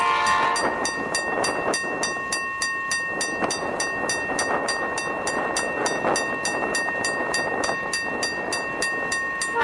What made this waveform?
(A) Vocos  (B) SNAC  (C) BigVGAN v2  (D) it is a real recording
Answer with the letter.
D